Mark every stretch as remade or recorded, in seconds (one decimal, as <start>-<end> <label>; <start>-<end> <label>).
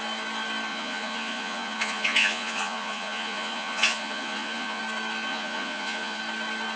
0.0-0.7 recorded; 0.7-4.8 remade; 4.8-5.3 recorded; 5.3-6.2 remade; 6.2-6.8 recorded